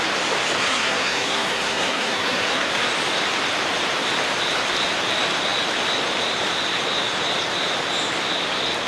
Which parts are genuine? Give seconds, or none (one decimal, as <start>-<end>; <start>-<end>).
0.0-0.6; 2.7-8.9